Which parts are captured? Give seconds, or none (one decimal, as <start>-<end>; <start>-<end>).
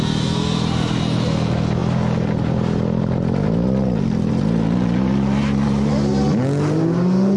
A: 0.0-7.4